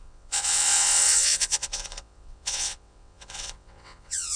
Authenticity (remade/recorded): remade